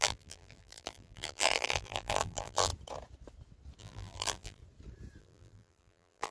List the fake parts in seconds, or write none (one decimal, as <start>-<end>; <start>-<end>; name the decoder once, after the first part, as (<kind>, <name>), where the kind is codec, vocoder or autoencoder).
0.0-2.7 (vocoder, BigVGAN v2); 3.8-4.6; 5.2-6.3